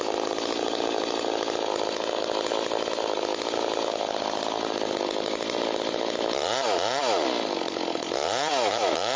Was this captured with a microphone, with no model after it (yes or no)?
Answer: yes